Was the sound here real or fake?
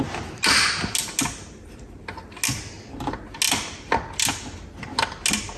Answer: real